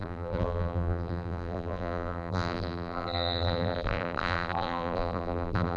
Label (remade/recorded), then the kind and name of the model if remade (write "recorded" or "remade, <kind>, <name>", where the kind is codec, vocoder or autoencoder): remade, vocoder, BigVGAN v2